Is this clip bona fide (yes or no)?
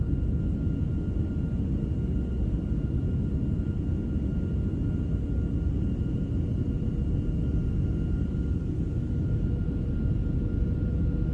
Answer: yes